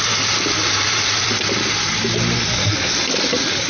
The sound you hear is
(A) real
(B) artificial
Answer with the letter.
A